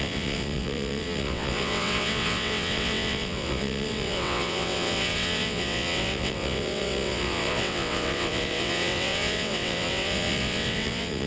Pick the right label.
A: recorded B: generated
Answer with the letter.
B